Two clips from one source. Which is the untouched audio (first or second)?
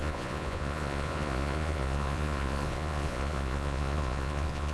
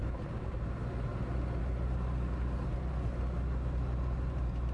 second